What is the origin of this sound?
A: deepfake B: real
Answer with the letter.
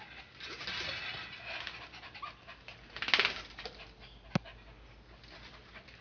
B